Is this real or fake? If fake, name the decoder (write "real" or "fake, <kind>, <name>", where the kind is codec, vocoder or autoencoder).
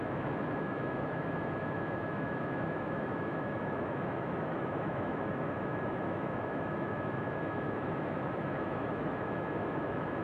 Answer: fake, autoencoder, DAC-VAE